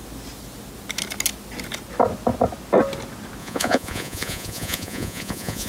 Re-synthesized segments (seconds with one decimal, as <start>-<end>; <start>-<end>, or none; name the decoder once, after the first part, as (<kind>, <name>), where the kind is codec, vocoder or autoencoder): 3.4-5.7 (vocoder, Vocos)